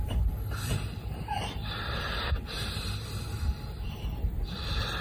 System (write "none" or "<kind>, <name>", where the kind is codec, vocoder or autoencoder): none